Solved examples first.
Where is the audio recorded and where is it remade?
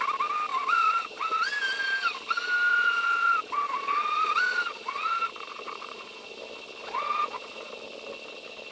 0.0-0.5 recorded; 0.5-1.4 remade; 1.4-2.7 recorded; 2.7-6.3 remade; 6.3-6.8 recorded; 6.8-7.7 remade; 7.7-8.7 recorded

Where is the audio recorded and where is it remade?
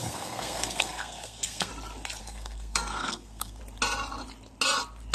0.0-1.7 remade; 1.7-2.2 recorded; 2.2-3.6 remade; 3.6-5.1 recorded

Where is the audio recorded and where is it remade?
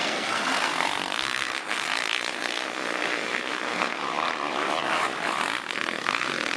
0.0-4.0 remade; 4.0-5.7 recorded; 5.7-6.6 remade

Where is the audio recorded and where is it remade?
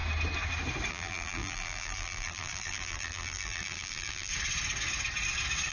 0.0-0.9 recorded; 0.9-4.3 remade; 4.3-5.7 recorded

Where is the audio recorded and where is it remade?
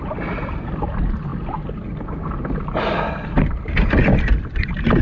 0.0-5.0 recorded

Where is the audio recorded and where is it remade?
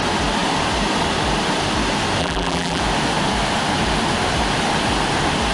0.0-2.2 recorded; 2.2-2.8 remade; 2.8-5.5 recorded